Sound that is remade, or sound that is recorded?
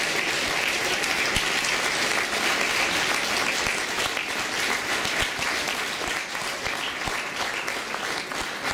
recorded